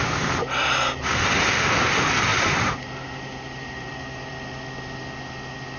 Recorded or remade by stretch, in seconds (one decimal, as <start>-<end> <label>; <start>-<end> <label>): 0.0-2.3 recorded; 2.3-4.3 remade; 4.3-5.8 recorded